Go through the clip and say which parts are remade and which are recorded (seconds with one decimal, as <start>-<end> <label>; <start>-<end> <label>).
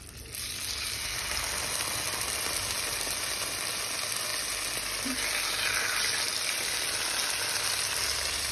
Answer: 0.0-8.5 recorded